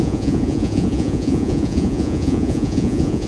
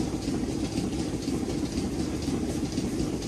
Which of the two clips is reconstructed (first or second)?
first